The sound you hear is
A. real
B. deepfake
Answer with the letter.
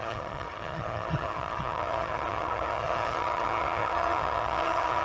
B